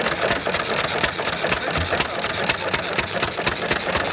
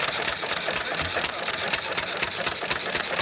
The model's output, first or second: second